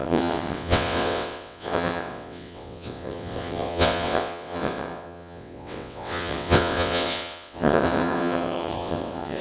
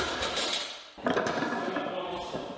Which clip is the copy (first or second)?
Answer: first